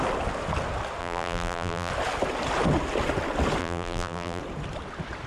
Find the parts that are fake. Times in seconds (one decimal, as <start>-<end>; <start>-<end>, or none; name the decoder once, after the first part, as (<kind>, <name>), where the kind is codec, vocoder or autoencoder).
1.0-1.9 (vocoder, BigVGAN v2); 3.6-4.4